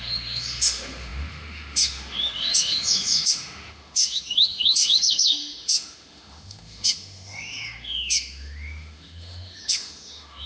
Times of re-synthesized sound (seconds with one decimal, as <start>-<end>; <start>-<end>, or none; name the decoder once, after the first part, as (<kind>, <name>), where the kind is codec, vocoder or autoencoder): 0.0-10.5 (autoencoder, DAC-VAE)